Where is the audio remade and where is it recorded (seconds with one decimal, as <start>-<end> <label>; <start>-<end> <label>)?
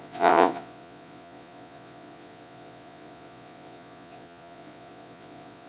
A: 0.0-5.7 remade